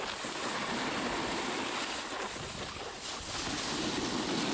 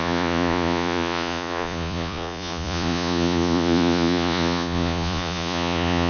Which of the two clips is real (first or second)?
first